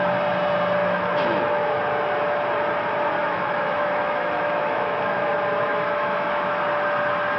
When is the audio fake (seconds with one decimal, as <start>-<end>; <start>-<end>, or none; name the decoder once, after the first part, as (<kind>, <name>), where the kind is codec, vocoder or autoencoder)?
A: 0.8-1.7 (autoencoder, DAC-VAE); 3.2-5.3; 5.7-6.6